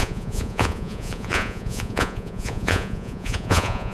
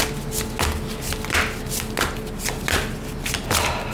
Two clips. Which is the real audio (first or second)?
second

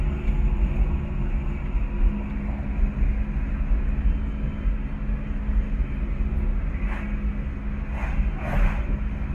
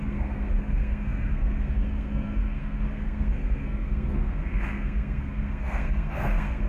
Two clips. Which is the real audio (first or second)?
first